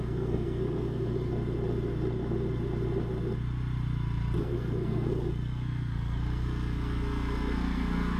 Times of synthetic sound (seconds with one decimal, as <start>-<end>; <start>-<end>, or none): 0.0-1.3; 4.4-8.2